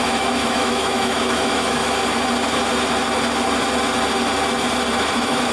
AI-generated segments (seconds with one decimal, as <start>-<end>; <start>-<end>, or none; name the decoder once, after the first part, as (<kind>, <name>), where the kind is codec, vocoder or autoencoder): 0.0-1.8 (autoencoder, DAC-VAE); 5.1-5.5